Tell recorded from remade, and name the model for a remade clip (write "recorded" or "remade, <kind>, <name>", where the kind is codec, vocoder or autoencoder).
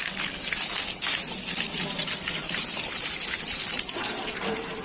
recorded